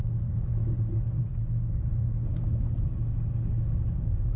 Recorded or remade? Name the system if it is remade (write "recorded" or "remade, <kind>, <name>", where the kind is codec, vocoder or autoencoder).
recorded